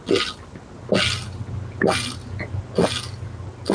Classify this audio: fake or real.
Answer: real